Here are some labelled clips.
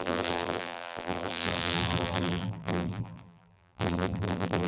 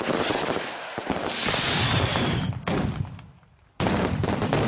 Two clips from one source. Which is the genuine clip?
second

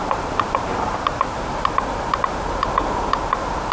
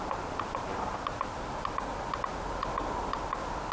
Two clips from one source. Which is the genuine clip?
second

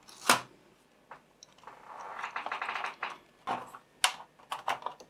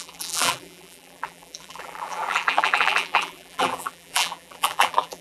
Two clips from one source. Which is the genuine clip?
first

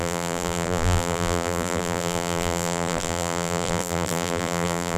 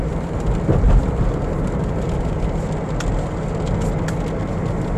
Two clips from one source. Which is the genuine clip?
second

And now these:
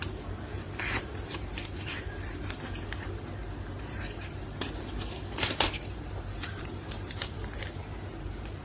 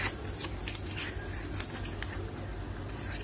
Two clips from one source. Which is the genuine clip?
second